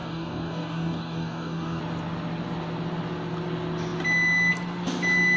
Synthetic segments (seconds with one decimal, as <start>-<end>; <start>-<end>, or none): 0.0-1.8